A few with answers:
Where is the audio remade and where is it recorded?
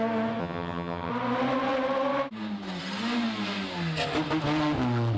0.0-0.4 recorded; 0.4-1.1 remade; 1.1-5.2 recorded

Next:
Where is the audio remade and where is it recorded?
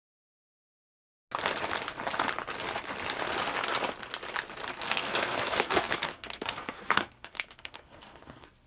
0.0-1.0 remade; 1.0-4.8 recorded; 4.8-8.7 remade